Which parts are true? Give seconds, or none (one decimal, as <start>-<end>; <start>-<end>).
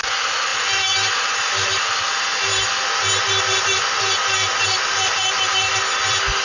0.0-0.5; 1.8-6.4